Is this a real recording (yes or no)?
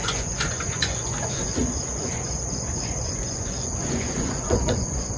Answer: no